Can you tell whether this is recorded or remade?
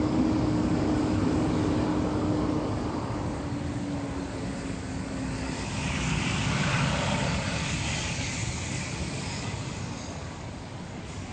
remade